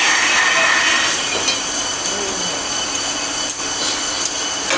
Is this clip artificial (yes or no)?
no